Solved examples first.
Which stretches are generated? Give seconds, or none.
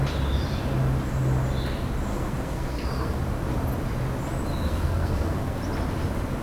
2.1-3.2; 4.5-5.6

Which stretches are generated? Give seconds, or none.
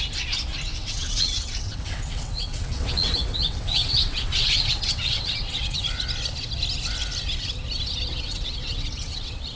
0.8-5.8; 8.1-9.6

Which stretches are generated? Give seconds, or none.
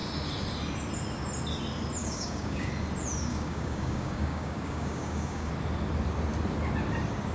2.0-2.7; 3.3-5.5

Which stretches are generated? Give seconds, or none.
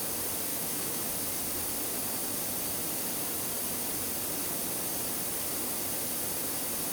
0.5-1.1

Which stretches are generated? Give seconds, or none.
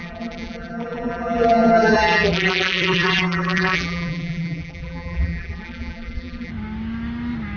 0.0-6.5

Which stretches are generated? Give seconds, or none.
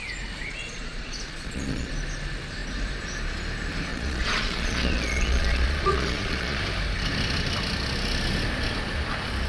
0.4-1.9; 3.9-6.6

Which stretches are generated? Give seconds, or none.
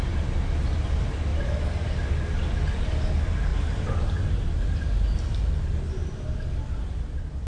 none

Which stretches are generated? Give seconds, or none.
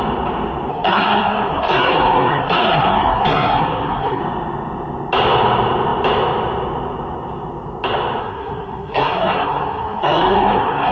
0.7-4.2; 8.2-10.9